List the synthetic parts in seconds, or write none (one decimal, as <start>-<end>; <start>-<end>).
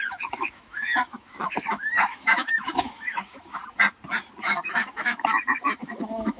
0.0-3.6; 4.4-6.4